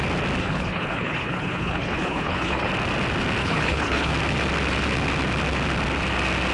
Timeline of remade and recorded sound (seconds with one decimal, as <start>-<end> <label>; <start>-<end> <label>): 0.0-0.4 recorded; 0.4-2.7 remade; 2.7-3.4 recorded; 3.4-4.1 remade; 4.1-6.5 recorded